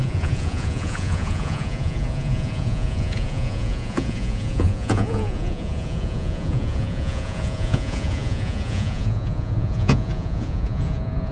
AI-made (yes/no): yes